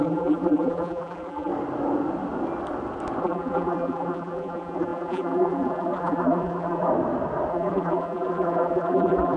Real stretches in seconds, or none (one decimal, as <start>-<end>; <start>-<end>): 1.5-3.2; 6.9-7.5